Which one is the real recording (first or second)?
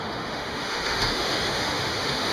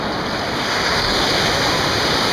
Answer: second